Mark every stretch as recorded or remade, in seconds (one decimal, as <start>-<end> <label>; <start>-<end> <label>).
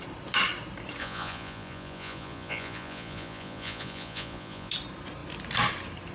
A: 0.0-1.0 recorded; 1.0-4.7 remade; 4.7-6.1 recorded